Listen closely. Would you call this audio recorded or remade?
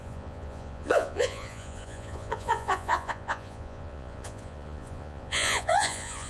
remade